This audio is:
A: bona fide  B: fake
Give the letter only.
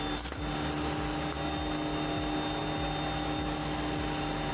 A